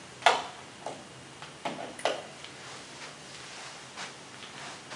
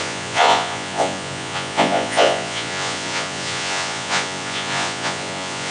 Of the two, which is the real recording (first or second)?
first